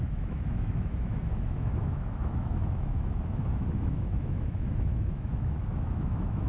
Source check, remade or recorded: remade